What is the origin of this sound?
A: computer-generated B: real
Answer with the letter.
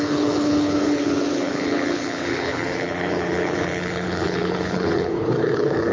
A